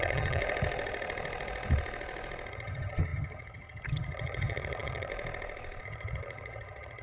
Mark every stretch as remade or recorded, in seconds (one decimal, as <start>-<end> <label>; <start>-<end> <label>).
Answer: 0.0-0.4 remade; 0.4-2.5 recorded; 2.5-5.1 remade; 5.1-5.8 recorded; 5.8-7.0 remade